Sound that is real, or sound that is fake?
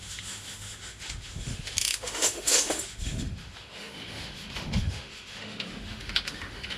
fake